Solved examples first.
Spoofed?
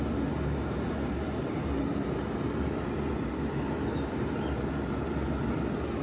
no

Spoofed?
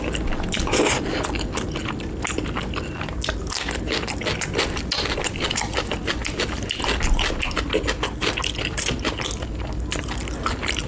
no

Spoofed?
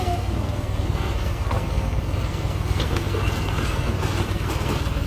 yes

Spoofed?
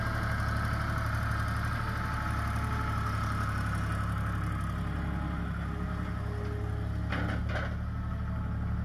no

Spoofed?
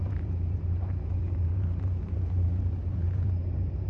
yes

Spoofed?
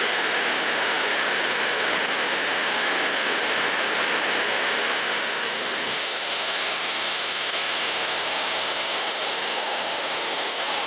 yes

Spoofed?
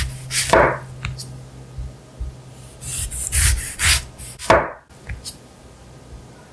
no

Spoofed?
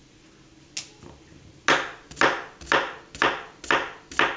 no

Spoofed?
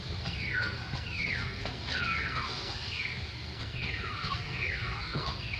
yes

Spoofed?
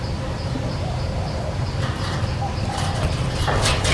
no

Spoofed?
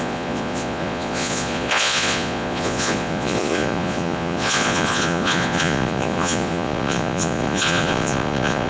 yes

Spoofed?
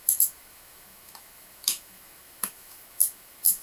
yes